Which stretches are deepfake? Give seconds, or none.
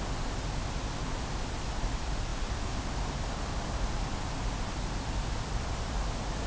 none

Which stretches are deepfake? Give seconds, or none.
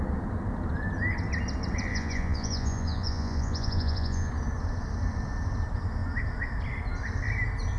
1.9-4.3 (vocoder, Vocos)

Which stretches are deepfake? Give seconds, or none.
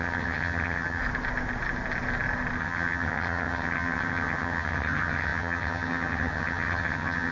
0.0-1.0 (vocoder, HiFi-GAN); 2.6-7.3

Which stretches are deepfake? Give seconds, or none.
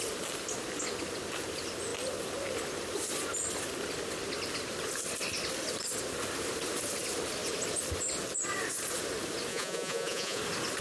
9.5-10.4 (vocoder, Vocos)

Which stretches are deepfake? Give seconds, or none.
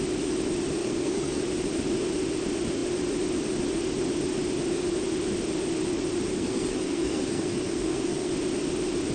0.8-1.4 (codec, SNAC); 6.3-8.3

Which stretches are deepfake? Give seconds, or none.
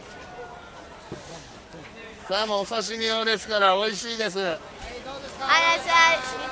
2.1-4.6 (codec, SNAC)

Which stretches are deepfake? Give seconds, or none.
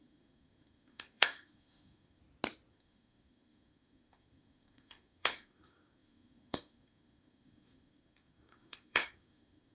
0.0-2.2 (codec, SNAC); 2.7-9.7